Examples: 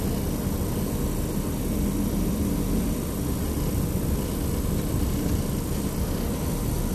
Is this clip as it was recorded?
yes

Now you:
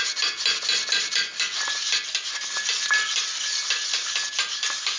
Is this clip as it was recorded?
yes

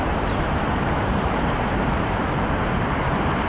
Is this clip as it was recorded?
no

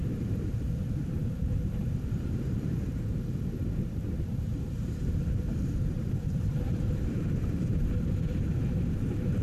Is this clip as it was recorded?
no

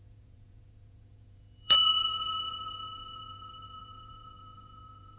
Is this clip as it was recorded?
no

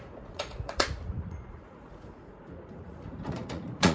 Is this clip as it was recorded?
no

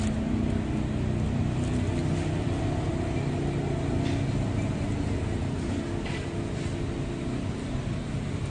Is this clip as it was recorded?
yes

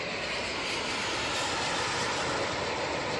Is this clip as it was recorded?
yes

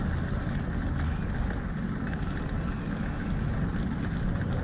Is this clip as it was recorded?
yes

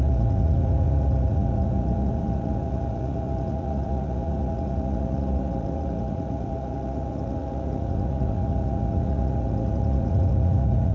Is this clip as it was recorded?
no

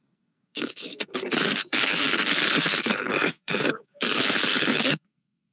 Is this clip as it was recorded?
no